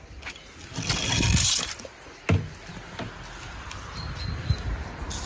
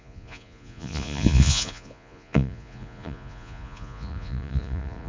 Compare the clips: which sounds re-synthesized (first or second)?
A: second